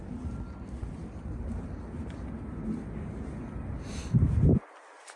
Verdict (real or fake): real